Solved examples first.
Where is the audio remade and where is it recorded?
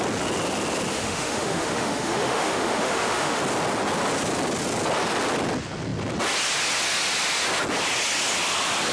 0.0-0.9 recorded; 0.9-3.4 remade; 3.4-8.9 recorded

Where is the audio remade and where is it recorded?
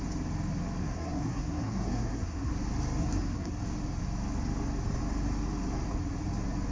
0.0-0.8 recorded; 0.8-2.5 remade; 2.5-3.0 recorded; 3.0-3.5 remade; 3.5-6.7 recorded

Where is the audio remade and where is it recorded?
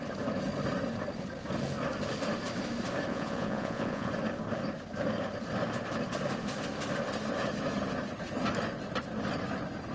0.0-3.1 recorded; 3.1-4.1 remade; 4.1-9.9 recorded